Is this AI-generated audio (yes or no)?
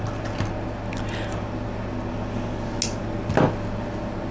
no